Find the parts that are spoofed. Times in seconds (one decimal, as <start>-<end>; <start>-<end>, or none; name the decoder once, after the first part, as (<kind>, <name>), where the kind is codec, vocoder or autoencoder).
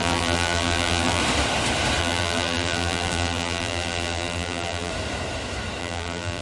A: 0.0-1.2 (vocoder, BigVGAN v2); 2.0-4.9; 5.8-6.4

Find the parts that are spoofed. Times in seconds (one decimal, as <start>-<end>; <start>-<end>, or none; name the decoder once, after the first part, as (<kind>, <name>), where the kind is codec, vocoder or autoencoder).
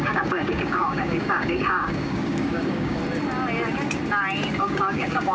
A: 0.0-3.0 (codec, DAC); 4.6-5.3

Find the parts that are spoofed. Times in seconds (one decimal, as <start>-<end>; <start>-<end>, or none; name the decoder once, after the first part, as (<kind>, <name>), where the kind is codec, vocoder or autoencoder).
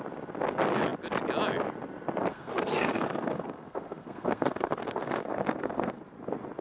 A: 2.3-6.0 (codec, SNAC)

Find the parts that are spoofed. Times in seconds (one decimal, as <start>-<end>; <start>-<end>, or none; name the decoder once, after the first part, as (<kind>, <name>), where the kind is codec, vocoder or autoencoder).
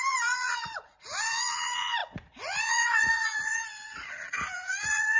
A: 0.0-5.2 (vocoder, Vocos)